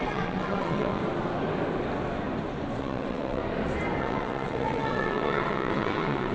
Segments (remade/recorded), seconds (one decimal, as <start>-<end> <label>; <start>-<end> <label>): 0.0-1.0 remade; 1.0-2.8 recorded; 2.8-3.4 remade; 3.4-4.0 recorded; 4.0-6.3 remade